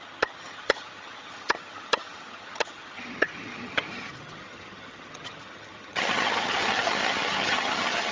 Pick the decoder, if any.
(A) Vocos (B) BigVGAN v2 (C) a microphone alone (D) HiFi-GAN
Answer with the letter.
D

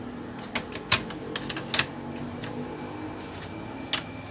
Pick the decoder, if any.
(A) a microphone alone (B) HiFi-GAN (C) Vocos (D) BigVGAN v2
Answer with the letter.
A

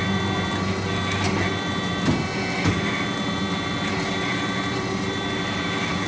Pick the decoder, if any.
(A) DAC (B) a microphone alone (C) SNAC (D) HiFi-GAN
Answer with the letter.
B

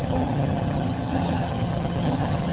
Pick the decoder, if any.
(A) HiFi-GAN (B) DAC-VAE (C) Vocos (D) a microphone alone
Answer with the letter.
A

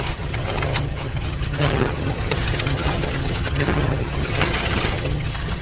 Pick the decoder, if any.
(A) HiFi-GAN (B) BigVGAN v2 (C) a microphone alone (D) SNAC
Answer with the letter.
A